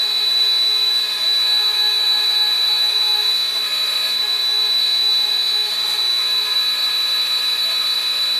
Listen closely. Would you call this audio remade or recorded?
remade